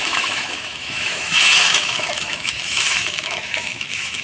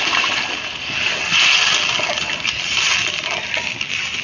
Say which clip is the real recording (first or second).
second